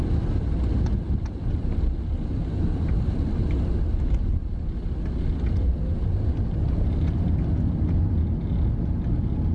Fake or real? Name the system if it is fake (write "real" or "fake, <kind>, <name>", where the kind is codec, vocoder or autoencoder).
real